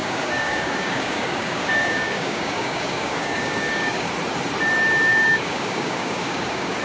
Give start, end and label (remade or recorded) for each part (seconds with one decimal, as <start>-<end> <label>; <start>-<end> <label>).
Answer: 0.0-4.1 remade; 4.1-5.1 recorded; 5.1-6.8 remade